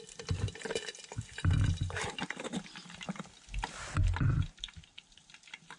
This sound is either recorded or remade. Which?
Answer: recorded